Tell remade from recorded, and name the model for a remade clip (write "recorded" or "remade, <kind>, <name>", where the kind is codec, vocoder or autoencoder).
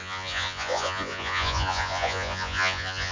remade, vocoder, Vocos